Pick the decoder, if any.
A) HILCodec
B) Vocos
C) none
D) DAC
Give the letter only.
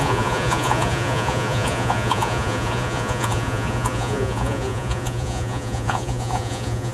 B